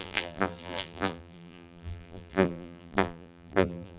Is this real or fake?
fake